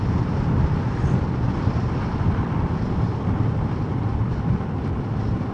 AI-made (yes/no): yes